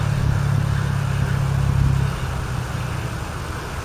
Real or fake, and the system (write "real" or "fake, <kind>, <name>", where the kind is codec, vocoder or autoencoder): real